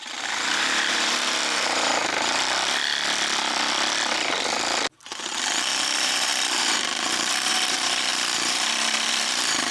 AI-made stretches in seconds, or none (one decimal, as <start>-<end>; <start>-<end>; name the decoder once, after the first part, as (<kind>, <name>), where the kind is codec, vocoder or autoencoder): 0.0-1.9 (vocoder, BigVGAN v2); 5.8-9.7